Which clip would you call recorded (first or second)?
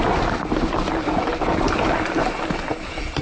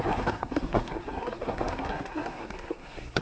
first